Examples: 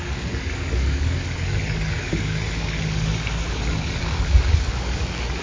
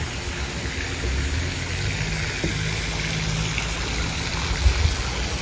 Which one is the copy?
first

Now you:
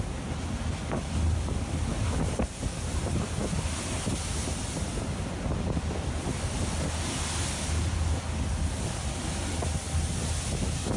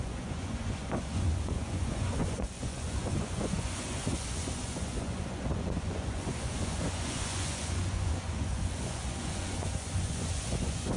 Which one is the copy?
second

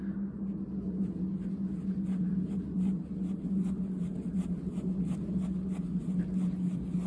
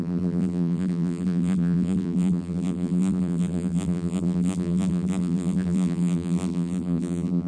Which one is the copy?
second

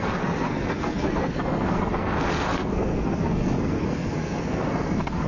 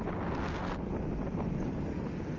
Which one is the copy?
first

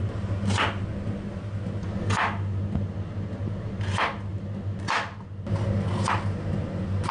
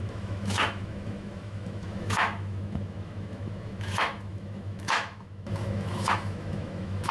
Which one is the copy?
second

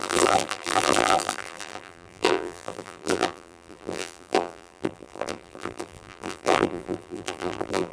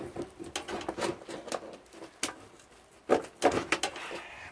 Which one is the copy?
first